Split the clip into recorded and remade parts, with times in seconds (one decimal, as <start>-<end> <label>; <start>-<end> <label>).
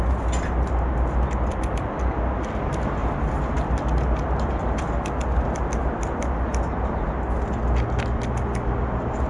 0.0-3.0 recorded; 3.0-3.8 remade; 3.8-9.3 recorded